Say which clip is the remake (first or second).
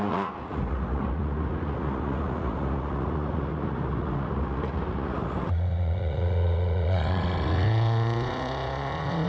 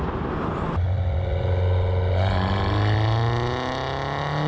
first